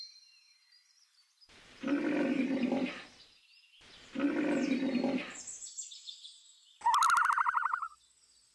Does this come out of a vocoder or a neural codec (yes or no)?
no